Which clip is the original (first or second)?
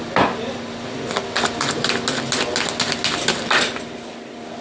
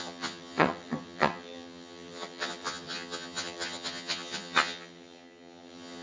first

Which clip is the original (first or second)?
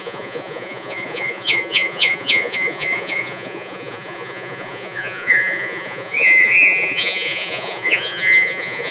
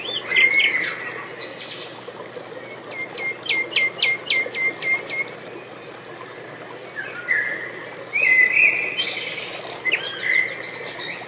second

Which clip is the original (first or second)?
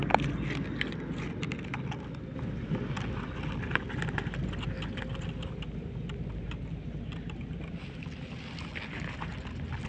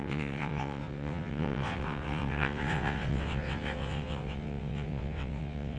first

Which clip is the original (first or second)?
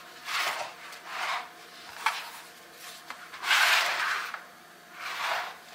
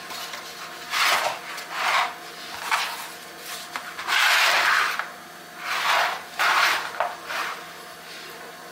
second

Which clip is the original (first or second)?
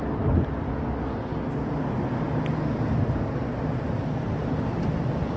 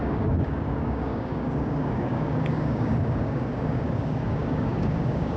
first